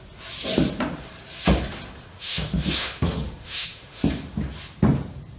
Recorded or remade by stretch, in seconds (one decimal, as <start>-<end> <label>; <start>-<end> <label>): 0.0-2.1 recorded; 2.1-4.0 remade; 4.0-5.4 recorded